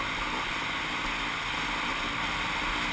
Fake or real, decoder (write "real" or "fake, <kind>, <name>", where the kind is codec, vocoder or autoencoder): real